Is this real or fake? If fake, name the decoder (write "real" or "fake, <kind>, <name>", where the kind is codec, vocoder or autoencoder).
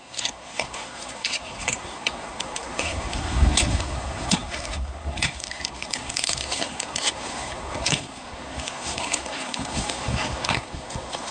fake, codec, SNAC